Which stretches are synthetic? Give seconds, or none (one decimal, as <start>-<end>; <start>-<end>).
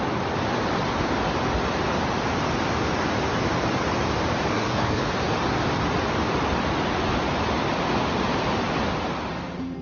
4.5-5.0